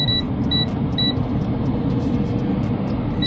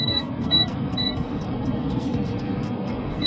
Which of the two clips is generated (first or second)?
second